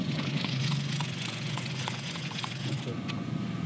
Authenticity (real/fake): fake